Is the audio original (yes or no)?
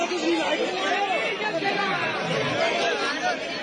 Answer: yes